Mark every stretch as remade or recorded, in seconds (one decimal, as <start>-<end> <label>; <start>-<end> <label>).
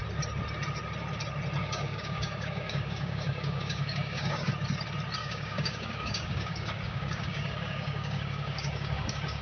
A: 0.0-1.6 recorded; 1.6-4.5 remade; 4.5-5.2 recorded; 5.2-9.4 remade